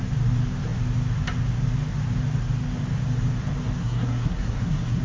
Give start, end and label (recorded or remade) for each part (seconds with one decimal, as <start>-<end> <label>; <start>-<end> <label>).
0.0-3.8 recorded; 3.8-5.0 remade